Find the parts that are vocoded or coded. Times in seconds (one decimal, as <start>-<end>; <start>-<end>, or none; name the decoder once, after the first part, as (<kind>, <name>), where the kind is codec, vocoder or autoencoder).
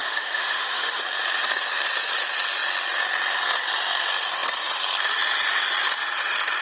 0.0-1.0 (autoencoder, DAC-VAE)